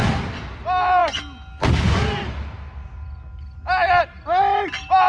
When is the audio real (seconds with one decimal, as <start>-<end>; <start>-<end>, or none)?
0.0-5.1